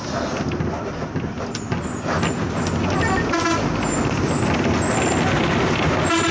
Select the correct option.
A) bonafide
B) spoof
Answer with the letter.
A